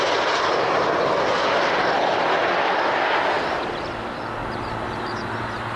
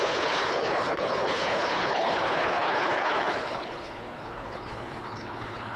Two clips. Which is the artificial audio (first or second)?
second